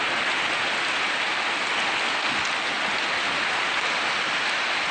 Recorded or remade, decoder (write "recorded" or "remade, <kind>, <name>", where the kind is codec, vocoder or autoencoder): recorded